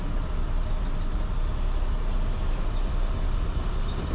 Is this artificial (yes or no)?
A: no